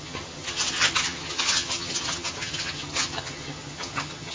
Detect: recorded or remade remade